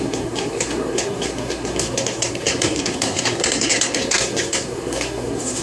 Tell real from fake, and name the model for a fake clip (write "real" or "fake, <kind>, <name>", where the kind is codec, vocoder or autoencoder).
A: fake, codec, SNAC